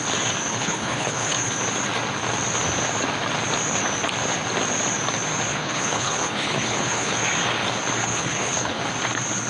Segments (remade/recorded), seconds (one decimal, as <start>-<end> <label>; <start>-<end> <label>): 0.0-0.5 recorded; 0.5-1.5 remade; 1.5-5.5 recorded; 5.5-7.2 remade; 7.2-8.0 recorded; 8.0-8.8 remade; 8.8-9.5 recorded